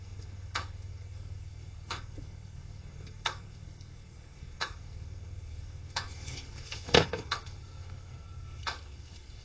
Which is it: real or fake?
fake